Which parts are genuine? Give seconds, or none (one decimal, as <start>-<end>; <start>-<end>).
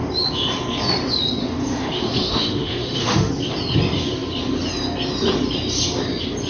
0.0-1.4; 3.3-6.5